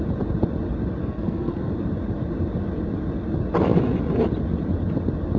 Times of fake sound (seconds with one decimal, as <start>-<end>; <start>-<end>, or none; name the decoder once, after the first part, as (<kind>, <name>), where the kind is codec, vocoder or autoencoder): 1.0-1.7 (codec, SNAC)

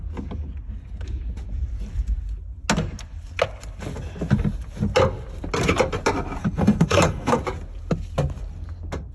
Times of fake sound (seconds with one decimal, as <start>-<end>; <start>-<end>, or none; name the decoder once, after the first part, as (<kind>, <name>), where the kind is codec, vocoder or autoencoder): 6.4-7.4 (codec, SNAC)

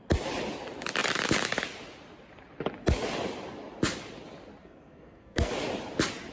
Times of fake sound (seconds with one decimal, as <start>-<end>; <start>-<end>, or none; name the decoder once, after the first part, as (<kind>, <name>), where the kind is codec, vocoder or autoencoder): 4.6-5.5 (codec, SNAC)